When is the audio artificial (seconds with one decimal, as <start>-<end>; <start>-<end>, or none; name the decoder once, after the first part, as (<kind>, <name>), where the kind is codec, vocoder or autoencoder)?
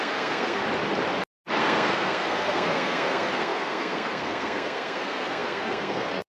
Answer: 0.0-0.6 (codec, SNAC); 1.6-6.3